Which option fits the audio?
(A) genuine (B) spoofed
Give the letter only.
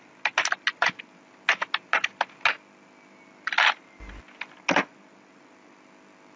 A